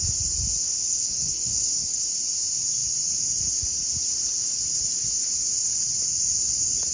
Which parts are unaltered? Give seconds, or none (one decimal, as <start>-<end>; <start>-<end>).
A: 0.0-0.9; 2.0-6.9